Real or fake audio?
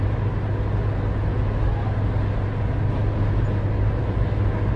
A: real